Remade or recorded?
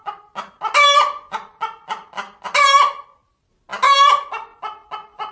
recorded